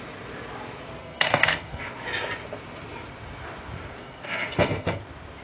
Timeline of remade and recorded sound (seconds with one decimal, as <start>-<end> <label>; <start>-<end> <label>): 0.0-1.0 recorded; 1.0-1.8 remade; 1.8-4.0 recorded; 4.0-5.0 remade; 5.0-5.4 recorded